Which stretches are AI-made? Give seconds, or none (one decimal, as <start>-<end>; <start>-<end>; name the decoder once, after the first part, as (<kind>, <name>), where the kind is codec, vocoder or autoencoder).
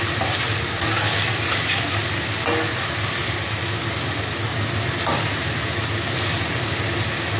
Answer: none